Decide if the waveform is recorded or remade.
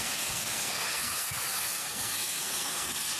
remade